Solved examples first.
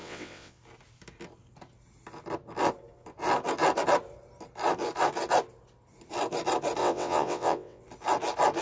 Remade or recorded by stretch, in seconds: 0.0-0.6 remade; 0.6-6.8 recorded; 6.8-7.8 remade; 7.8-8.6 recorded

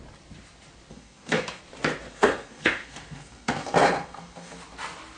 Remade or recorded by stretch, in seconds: 0.0-0.9 recorded; 0.9-1.6 remade; 1.6-2.1 recorded; 2.1-4.6 remade; 4.6-5.2 recorded

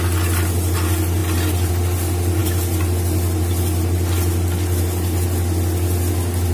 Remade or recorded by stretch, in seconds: 0.0-6.5 recorded

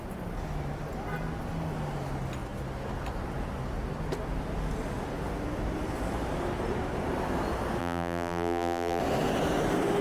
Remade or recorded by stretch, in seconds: 0.0-7.8 recorded; 7.8-9.0 remade; 9.0-10.0 recorded

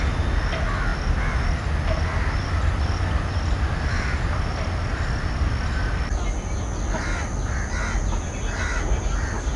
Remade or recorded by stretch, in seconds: 0.0-9.6 recorded